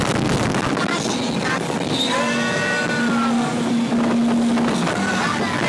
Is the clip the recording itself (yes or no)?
yes